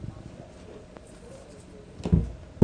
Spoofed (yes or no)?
no